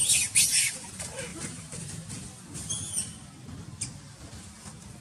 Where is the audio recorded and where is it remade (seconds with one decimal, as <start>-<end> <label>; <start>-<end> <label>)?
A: 0.0-0.9 remade; 0.9-1.3 recorded; 1.3-1.9 remade; 1.9-5.0 recorded